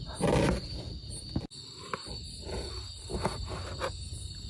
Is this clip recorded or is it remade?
recorded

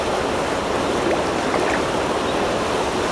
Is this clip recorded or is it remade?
recorded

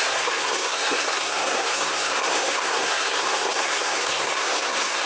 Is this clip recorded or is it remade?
remade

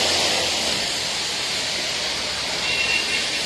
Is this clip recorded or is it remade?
recorded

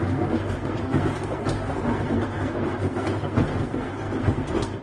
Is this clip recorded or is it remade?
remade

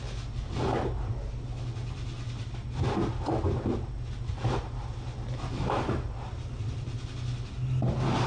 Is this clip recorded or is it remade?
recorded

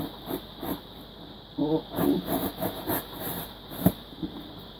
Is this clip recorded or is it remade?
recorded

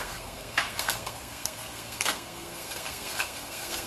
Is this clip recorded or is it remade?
remade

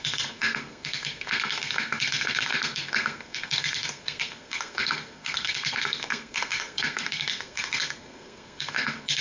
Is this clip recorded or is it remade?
remade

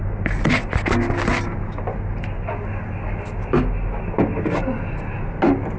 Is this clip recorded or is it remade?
recorded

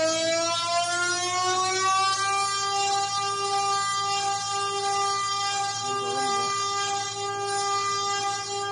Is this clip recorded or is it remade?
recorded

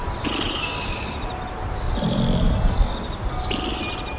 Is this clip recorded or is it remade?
recorded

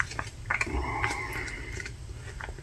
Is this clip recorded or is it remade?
recorded